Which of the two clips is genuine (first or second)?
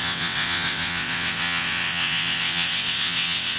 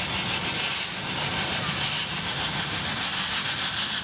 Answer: second